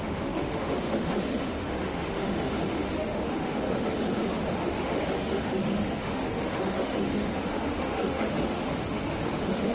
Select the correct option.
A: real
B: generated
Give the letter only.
B